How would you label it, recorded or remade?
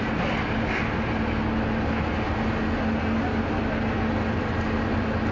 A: recorded